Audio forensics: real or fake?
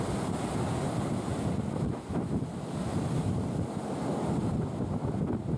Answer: real